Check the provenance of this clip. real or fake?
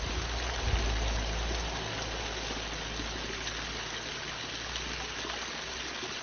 real